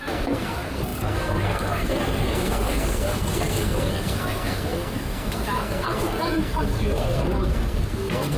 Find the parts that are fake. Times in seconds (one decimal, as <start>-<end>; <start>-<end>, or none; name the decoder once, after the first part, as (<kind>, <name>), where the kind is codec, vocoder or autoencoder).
0.0-8.4 (codec, SNAC)